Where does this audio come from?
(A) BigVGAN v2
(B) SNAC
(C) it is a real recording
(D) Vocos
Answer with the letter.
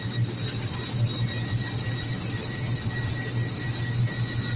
C